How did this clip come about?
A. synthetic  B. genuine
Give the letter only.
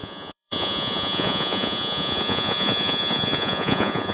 A